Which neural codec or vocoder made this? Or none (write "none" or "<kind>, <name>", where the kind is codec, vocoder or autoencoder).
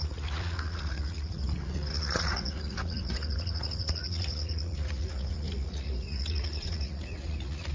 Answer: vocoder, Vocos